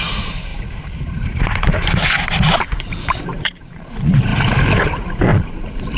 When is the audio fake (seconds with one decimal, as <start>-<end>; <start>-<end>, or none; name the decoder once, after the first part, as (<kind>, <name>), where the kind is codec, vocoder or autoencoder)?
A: 0.0-1.8 (vocoder, BigVGAN v2); 2.6-4.3; 4.8-6.0